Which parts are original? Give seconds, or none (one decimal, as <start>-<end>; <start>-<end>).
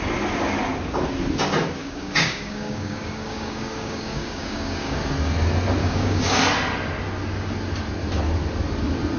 0.0-1.8; 5.0-5.8; 6.4-9.2